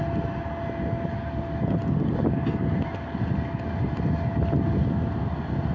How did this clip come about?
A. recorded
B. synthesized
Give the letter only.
A